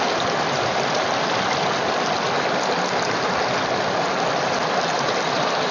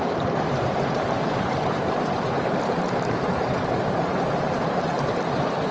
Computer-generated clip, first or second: second